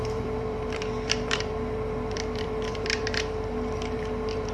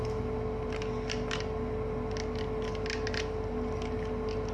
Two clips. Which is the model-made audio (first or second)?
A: first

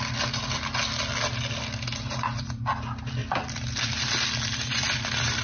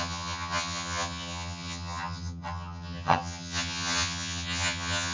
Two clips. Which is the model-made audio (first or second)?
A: second